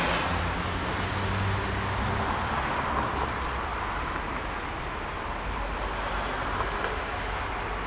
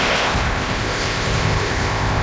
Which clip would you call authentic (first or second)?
first